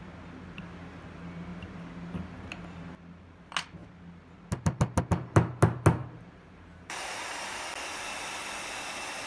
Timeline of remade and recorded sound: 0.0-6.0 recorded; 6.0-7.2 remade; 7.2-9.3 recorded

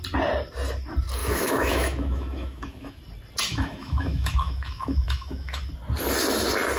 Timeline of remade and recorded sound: 0.0-1.2 recorded; 1.2-3.0 remade; 3.0-3.5 recorded; 3.5-5.6 remade; 5.6-6.8 recorded

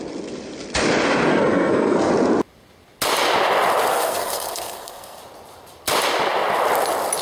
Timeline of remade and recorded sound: 0.0-1.3 recorded; 1.3-2.1 remade; 2.1-3.9 recorded; 3.9-5.2 remade; 5.2-7.2 recorded